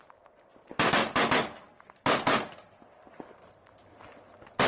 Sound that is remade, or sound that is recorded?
recorded